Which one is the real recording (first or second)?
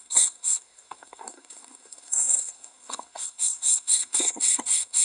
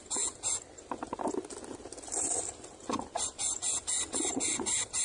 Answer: second